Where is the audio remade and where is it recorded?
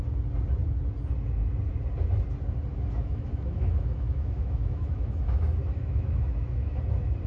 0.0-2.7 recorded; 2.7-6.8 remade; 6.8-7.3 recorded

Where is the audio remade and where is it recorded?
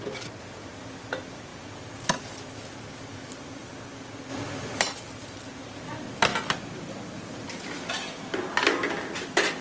0.0-9.6 recorded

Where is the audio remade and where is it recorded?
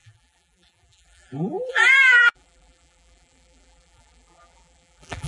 0.0-5.3 remade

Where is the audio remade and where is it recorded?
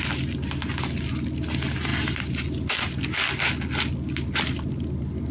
0.0-5.3 recorded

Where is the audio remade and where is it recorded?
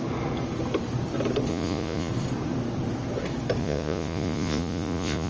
0.0-1.5 recorded; 1.5-2.1 remade; 2.1-3.6 recorded; 3.6-5.3 remade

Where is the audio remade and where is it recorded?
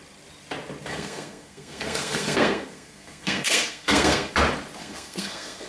0.0-0.9 recorded; 0.9-4.3 remade; 4.3-4.8 recorded; 4.8-5.7 remade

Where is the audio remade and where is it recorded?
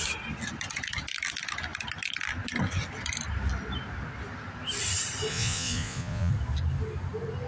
0.0-5.3 recorded; 5.3-6.3 remade; 6.3-7.5 recorded